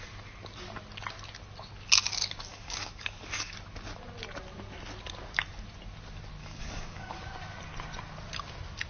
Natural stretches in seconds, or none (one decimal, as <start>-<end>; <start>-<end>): 0.0-2.5; 3.5-6.4; 7.2-8.9